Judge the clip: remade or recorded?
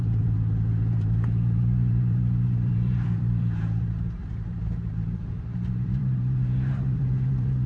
remade